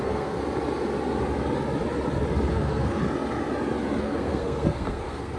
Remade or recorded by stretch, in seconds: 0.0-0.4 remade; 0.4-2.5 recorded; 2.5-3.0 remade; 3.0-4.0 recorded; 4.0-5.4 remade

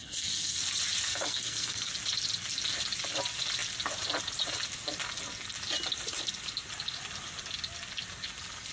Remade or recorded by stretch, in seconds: 0.0-0.6 remade; 0.6-1.1 recorded; 1.1-1.9 remade; 1.9-8.7 recorded

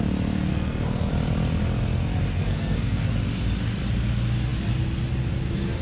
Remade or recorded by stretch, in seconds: 0.0-0.5 recorded; 0.5-1.1 remade; 1.1-2.3 recorded; 2.3-3.1 remade; 3.1-5.8 recorded

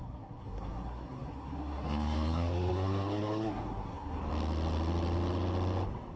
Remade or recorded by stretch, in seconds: 0.0-4.2 remade; 4.2-6.2 recorded

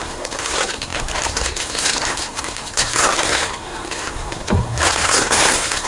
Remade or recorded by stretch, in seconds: 0.0-5.9 remade